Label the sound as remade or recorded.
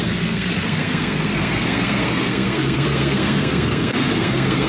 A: remade